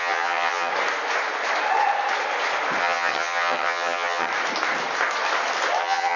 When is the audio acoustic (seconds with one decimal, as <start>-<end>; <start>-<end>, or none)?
0.7-2.8; 4.3-5.8